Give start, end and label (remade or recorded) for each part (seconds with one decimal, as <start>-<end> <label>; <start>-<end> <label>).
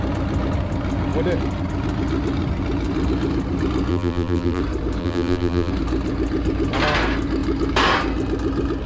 0.0-3.9 recorded; 3.9-4.6 remade; 4.6-5.0 recorded; 5.0-5.7 remade; 5.7-8.9 recorded